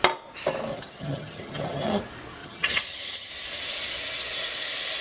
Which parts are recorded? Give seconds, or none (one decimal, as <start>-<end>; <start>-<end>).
0.0-0.7; 2.0-2.4; 3.3-5.0